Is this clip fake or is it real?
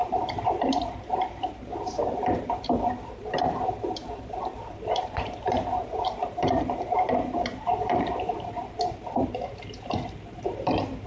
fake